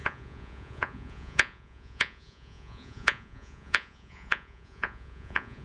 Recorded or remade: remade